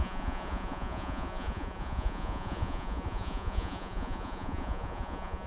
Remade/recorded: remade